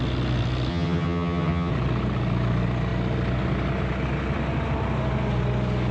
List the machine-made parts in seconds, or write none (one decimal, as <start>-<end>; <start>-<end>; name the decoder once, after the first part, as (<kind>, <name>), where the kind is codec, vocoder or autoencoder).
0.7-1.7 (vocoder, HiFi-GAN)